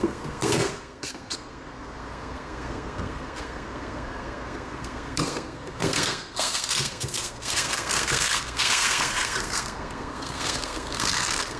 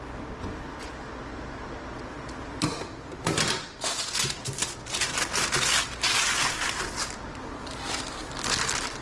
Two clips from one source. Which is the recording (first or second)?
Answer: second